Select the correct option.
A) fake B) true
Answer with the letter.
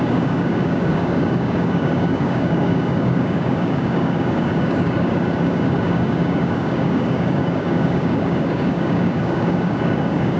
A